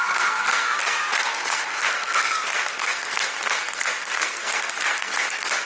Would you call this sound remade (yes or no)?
yes